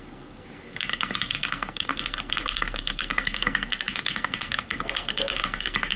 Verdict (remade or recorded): remade